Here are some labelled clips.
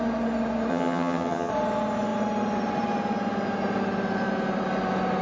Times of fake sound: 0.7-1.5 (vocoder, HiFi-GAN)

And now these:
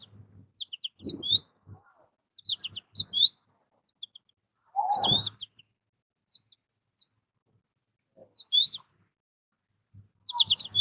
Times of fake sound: 1.4-1.9 (autoencoder, DAC-VAE)

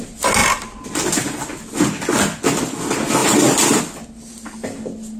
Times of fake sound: 3.2-3.8 (vocoder, BigVGAN v2)